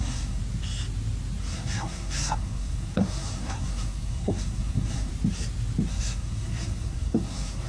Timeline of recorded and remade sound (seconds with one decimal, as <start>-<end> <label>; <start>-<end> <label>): 0.0-0.4 remade; 0.4-1.4 recorded; 1.4-5.1 remade; 5.1-5.9 recorded; 5.9-7.7 remade